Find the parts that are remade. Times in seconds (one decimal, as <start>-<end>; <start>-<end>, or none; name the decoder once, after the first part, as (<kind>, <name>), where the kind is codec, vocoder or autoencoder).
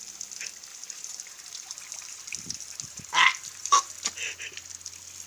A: 0.7-3.9 (vocoder, BigVGAN v2)